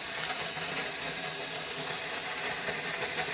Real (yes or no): yes